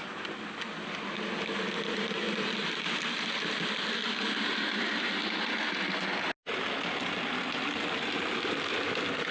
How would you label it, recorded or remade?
recorded